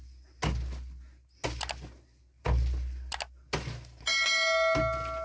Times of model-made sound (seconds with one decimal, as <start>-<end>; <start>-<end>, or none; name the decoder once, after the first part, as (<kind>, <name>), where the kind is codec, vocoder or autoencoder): none